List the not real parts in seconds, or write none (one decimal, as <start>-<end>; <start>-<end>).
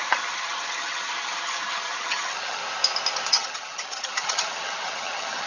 0.0-2.6; 3.3-5.5